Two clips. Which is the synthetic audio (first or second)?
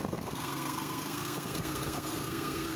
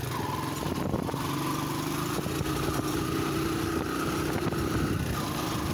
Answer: first